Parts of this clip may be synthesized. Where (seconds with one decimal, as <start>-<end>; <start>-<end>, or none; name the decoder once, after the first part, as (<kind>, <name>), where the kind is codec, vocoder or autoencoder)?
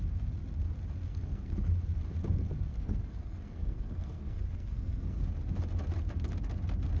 1.1-1.7 (codec, SNAC); 2.7-5.2